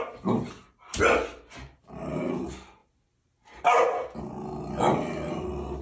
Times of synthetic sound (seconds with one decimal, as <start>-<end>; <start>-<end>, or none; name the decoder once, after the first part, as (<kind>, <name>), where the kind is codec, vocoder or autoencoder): none